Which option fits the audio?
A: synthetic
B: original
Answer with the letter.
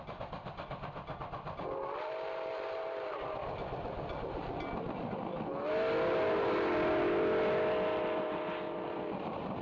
B